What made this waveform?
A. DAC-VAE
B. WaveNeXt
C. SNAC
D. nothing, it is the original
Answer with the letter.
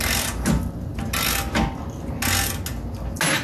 D